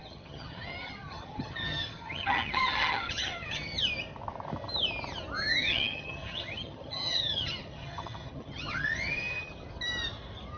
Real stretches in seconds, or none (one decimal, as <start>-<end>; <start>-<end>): 3.8-5.6; 9.5-10.6